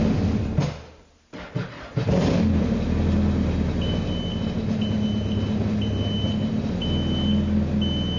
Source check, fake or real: real